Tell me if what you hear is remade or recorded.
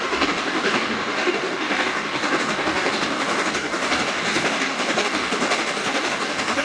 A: remade